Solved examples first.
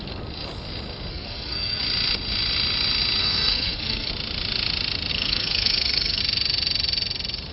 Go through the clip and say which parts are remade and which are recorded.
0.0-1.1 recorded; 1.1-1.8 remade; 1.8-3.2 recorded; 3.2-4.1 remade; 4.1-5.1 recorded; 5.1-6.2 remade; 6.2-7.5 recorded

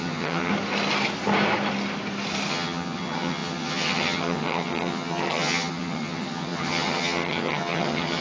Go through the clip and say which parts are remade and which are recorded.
0.0-0.5 remade; 0.5-2.5 recorded; 2.5-8.2 remade

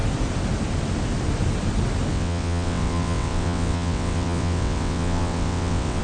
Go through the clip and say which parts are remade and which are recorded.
0.0-2.1 recorded; 2.1-6.0 remade

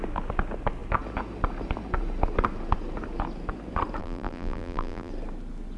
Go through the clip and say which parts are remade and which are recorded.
0.0-4.0 recorded; 4.0-5.1 remade; 5.1-5.8 recorded

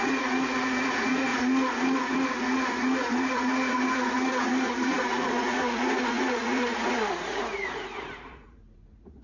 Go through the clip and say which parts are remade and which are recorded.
0.0-9.2 remade

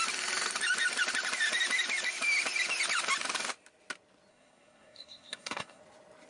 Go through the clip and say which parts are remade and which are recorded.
0.0-4.3 recorded; 4.3-5.8 remade; 5.8-6.3 recorded

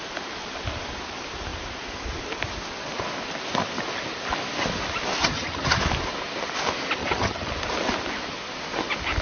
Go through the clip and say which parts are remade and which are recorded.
0.0-5.2 recorded; 5.2-5.8 remade; 5.8-7.0 recorded; 7.0-7.5 remade; 7.5-9.2 recorded

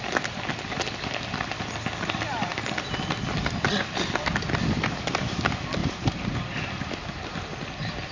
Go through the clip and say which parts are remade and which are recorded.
0.0-5.8 recorded; 5.8-6.6 remade; 6.6-8.1 recorded